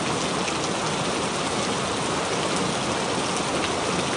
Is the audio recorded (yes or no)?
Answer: yes